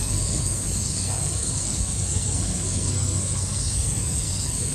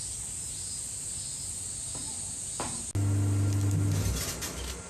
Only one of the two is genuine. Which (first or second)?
second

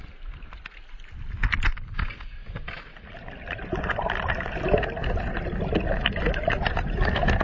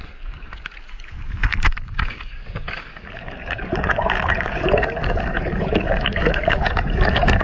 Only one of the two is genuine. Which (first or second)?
first